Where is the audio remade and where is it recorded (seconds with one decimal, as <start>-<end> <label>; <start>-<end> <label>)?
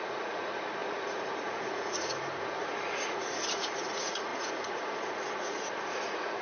0.0-6.4 remade